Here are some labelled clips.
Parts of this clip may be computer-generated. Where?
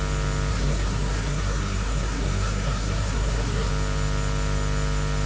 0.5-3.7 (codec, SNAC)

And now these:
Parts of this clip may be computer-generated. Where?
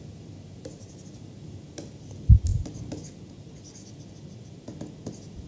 none